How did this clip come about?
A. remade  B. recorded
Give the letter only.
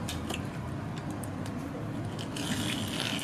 B